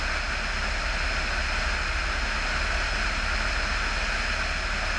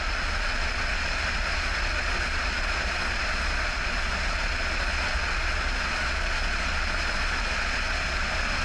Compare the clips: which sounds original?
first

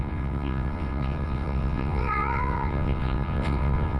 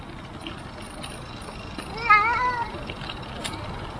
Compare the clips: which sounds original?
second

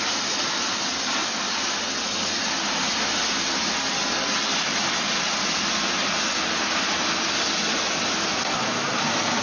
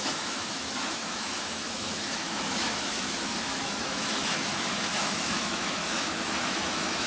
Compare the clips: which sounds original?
first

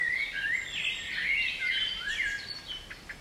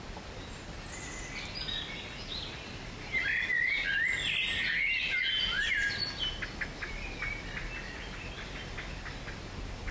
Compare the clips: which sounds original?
second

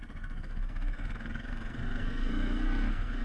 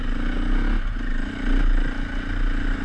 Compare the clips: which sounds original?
second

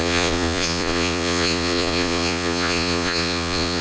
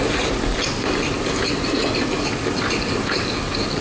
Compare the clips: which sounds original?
second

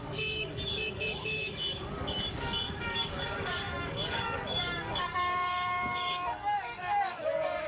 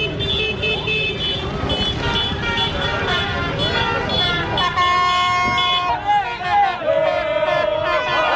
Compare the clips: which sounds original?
second